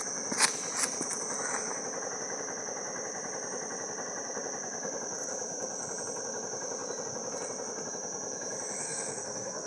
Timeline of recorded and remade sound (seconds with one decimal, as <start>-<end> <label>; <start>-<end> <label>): 0.0-8.8 recorded; 8.8-9.7 remade